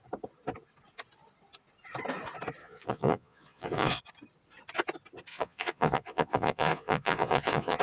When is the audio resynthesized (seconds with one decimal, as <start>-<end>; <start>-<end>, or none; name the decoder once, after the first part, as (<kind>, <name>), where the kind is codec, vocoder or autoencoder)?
2.6-4.0 (vocoder, Vocos); 5.3-7.8